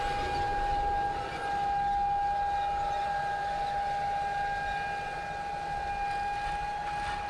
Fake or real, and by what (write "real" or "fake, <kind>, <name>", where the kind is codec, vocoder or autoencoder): real